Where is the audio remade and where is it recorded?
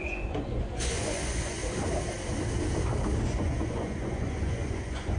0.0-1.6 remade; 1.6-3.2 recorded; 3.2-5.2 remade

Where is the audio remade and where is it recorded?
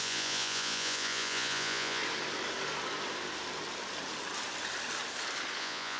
0.0-2.0 remade; 2.0-5.6 recorded; 5.6-6.0 remade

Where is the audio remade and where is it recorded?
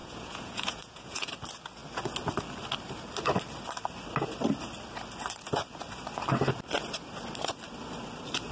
0.0-1.3 remade; 1.3-8.5 recorded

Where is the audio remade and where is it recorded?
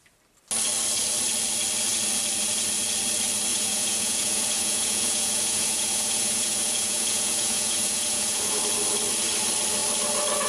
0.0-3.5 recorded; 3.5-8.6 remade; 8.6-10.5 recorded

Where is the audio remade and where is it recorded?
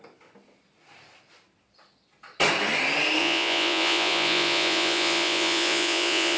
0.0-3.2 recorded; 3.2-6.4 remade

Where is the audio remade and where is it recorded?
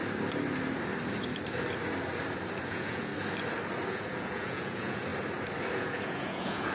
0.0-2.7 recorded; 2.7-3.1 remade; 3.1-3.9 recorded; 3.9-5.1 remade; 5.1-5.7 recorded; 5.7-6.7 remade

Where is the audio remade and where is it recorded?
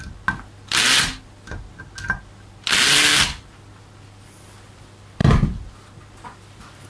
0.0-6.9 recorded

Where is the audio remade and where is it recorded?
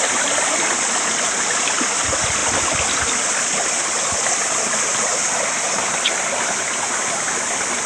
0.0-7.9 recorded